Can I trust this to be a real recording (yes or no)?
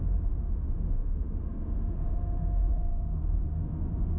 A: no